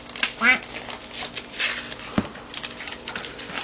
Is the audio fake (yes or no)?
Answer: no